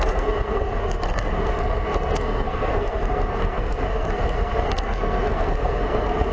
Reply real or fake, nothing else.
fake